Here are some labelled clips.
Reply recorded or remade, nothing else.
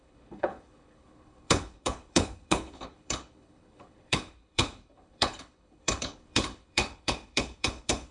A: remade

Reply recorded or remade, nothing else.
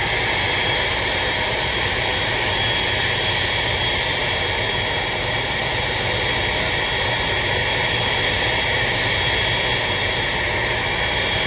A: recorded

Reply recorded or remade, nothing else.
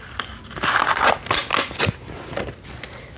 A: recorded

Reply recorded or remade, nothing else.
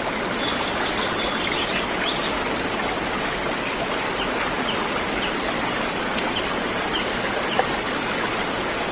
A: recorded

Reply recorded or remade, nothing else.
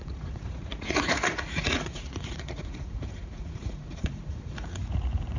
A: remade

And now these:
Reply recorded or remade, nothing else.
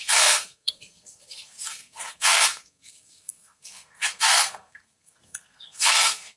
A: remade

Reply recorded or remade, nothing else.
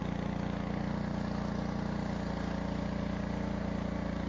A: recorded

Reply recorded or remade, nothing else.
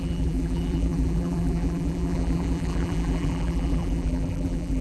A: remade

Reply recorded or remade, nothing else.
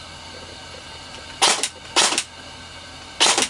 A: recorded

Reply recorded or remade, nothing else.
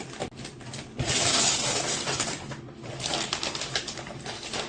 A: recorded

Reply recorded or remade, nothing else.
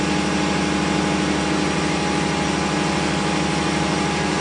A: recorded